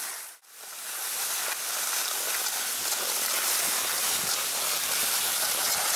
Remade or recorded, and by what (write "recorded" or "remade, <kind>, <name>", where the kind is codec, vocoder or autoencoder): recorded